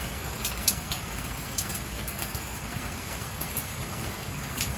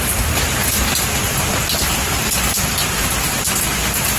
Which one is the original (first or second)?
second